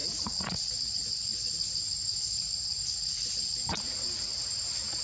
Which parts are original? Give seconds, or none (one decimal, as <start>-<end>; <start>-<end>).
0.0-5.0